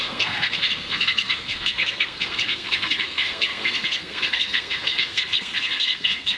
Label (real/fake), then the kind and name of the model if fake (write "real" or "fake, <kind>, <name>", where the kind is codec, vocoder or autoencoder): fake, codec, SNAC